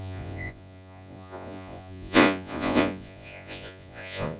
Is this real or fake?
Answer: fake